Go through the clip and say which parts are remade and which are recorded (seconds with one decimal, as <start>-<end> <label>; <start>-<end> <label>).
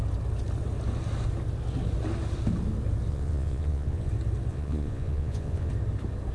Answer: 0.0-3.1 recorded; 3.1-4.1 remade; 4.1-4.5 recorded; 4.5-5.7 remade; 5.7-6.3 recorded